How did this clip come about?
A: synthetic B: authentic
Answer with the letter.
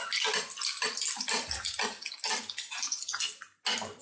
B